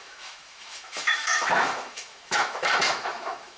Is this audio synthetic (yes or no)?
yes